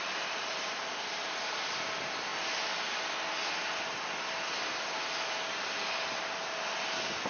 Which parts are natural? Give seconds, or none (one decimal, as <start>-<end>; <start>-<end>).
0.0-7.3